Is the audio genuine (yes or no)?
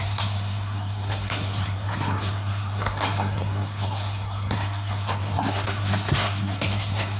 no